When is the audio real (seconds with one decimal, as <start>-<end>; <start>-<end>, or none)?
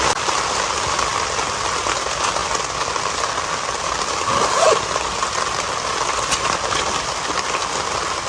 0.0-8.3